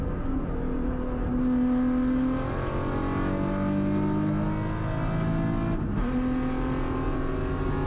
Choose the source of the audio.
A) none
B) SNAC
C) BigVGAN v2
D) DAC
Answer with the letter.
A